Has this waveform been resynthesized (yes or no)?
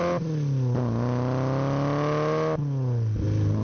no